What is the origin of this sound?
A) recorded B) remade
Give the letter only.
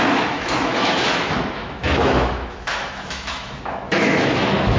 B